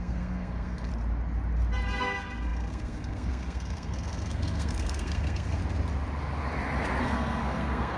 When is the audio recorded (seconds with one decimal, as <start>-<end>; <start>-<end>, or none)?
0.9-2.0; 5.6-7.0